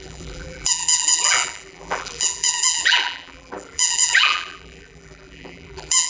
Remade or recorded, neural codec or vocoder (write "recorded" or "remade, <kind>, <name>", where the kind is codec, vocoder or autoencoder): remade, vocoder, BigVGAN v2